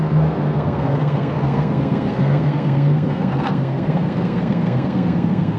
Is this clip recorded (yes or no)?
no